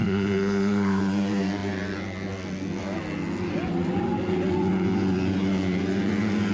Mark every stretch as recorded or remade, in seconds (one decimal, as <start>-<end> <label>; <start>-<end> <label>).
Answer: 0.0-1.0 remade; 1.0-6.5 recorded